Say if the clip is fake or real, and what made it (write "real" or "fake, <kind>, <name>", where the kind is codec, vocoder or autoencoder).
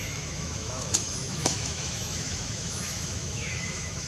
fake, autoencoder, DAC-VAE